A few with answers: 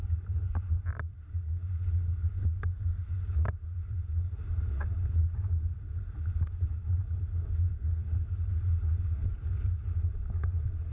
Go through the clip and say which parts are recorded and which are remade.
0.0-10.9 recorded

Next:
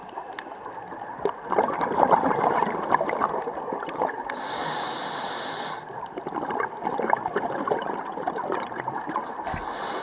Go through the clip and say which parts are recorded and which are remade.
0.0-10.0 recorded

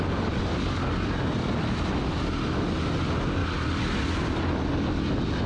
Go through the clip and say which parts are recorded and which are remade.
0.0-5.5 recorded

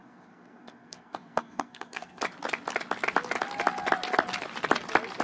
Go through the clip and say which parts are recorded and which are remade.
0.0-2.2 remade; 2.2-5.2 recorded

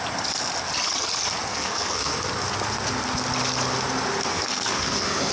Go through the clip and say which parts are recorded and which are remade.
0.0-1.5 recorded; 1.5-2.2 remade; 2.2-4.3 recorded; 4.3-5.3 remade